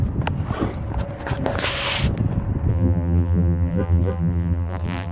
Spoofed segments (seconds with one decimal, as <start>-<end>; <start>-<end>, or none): 2.7-5.1